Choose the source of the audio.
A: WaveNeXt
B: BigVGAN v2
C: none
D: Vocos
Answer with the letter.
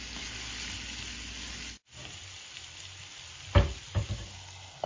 C